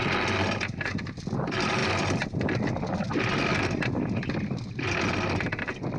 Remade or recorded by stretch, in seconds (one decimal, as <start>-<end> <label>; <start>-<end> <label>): 0.0-6.0 recorded